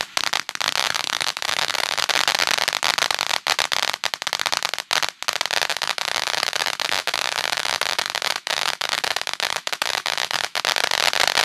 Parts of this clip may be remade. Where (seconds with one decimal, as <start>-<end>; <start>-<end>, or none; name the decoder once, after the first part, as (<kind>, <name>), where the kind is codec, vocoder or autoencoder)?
0.8-2.0 (autoencoder, DAC-VAE); 5.7-10.6